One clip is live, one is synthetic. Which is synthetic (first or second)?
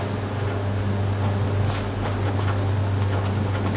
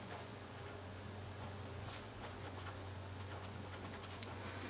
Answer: second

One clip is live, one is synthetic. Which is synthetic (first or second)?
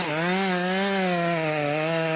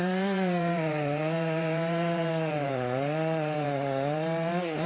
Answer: second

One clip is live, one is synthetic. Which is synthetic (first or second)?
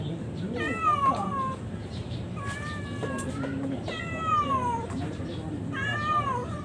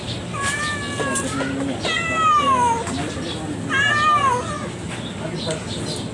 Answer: first